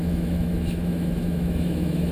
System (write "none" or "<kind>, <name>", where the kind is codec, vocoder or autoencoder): autoencoder, DAC-VAE